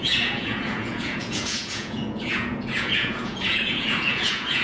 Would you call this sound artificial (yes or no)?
yes